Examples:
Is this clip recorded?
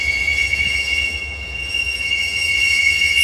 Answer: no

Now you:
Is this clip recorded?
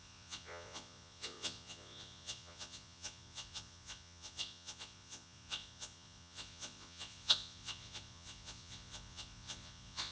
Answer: no